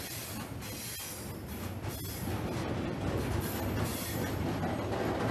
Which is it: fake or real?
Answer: real